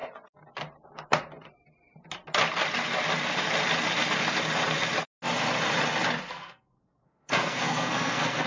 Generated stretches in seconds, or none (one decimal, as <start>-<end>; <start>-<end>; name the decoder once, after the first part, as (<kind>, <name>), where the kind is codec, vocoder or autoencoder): 6.3-8.5 (codec, SNAC)